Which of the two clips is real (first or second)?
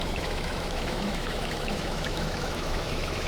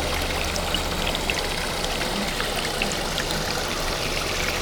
second